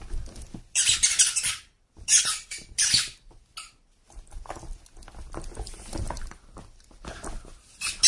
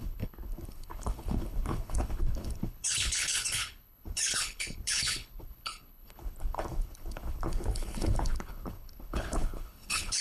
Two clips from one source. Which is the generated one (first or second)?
second